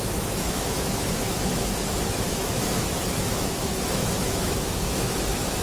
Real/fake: fake